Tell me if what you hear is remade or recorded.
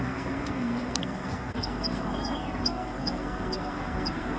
remade